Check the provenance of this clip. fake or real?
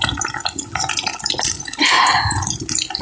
real